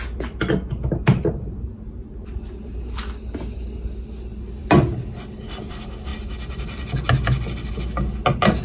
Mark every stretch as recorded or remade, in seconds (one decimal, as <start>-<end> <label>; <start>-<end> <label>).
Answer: 0.0-8.6 recorded